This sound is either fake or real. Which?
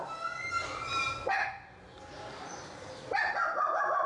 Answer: real